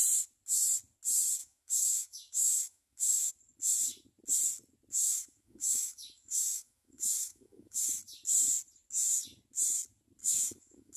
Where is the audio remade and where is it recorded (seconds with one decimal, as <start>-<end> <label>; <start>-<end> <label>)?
0.0-1.4 recorded; 1.4-3.3 remade; 3.3-5.0 recorded; 5.0-8.0 remade; 8.0-10.2 recorded; 10.2-11.0 remade